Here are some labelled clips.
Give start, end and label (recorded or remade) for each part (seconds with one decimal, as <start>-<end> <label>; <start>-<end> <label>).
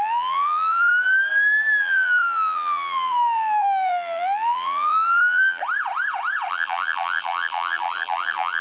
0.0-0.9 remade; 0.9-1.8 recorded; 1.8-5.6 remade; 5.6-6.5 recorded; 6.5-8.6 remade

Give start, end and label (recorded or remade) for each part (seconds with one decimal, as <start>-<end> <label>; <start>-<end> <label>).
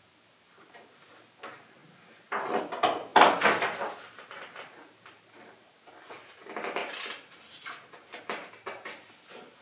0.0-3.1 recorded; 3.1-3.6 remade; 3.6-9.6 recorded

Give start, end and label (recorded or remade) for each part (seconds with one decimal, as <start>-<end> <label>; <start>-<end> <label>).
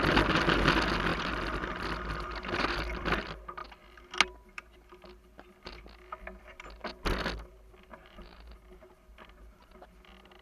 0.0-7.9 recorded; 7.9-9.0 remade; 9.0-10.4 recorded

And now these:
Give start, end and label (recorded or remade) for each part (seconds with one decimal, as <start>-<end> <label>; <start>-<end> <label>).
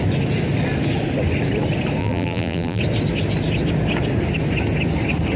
0.0-2.0 recorded; 2.0-2.8 remade; 2.8-5.4 recorded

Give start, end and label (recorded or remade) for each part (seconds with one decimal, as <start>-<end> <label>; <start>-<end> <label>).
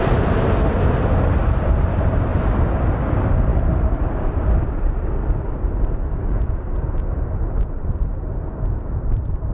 0.0-2.3 remade; 2.3-2.9 recorded; 2.9-9.5 remade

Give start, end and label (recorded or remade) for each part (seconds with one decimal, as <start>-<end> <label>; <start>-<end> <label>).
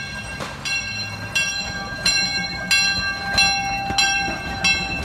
0.0-1.5 recorded; 1.5-2.6 remade; 2.6-4.0 recorded; 4.0-4.6 remade; 4.6-5.0 recorded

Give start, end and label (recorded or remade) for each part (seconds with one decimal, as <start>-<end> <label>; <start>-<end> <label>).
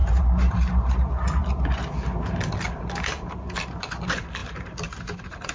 0.0-0.9 remade; 0.9-4.4 recorded; 4.4-5.5 remade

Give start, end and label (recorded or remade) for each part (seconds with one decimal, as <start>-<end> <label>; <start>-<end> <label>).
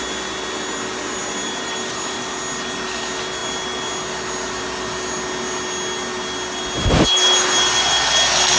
0.0-8.6 recorded